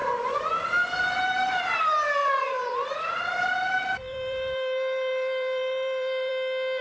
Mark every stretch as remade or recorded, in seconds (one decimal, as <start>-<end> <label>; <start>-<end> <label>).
0.0-1.8 remade; 1.8-2.2 recorded; 2.2-6.3 remade; 6.3-6.8 recorded